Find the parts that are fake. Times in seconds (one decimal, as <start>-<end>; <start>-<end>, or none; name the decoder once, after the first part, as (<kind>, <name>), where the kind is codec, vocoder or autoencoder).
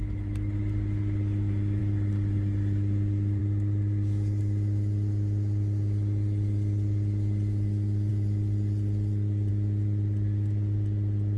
none